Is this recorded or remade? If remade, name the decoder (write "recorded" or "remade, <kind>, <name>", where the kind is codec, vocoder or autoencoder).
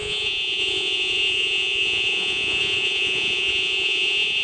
remade, vocoder, Vocos